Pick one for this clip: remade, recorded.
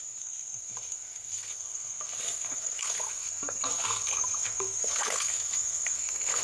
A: remade